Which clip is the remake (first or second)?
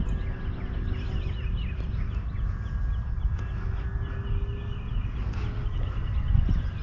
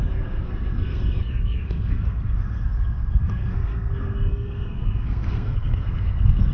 second